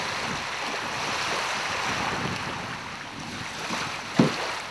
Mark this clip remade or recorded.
recorded